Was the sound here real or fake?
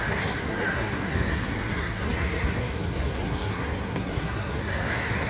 fake